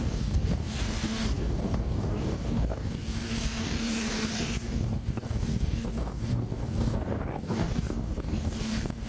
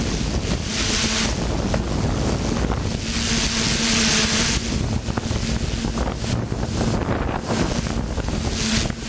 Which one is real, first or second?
second